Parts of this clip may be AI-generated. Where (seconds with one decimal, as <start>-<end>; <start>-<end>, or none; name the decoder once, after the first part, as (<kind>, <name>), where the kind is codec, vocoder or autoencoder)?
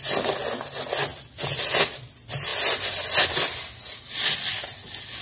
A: none